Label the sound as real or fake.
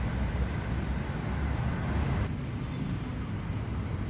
real